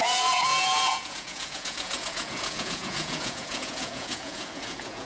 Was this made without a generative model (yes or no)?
no